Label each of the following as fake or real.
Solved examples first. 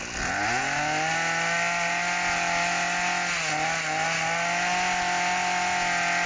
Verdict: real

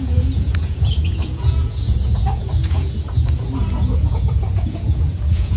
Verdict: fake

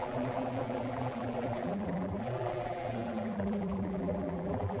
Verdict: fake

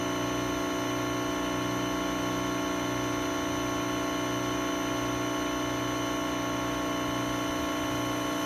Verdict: real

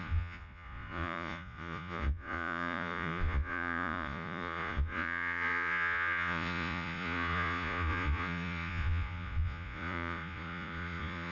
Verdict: fake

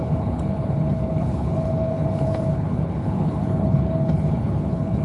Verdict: fake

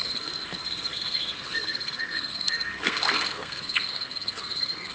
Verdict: fake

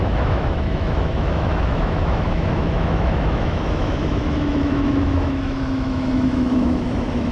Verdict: fake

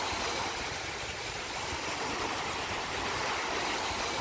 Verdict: real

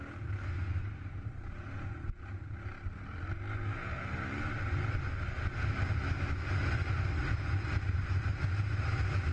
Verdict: real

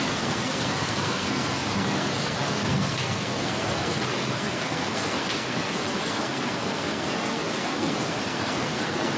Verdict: fake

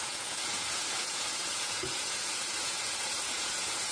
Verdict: fake